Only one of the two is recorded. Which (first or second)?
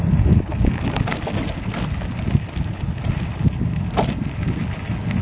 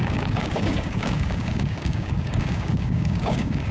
first